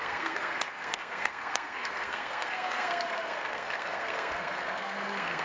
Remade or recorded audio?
remade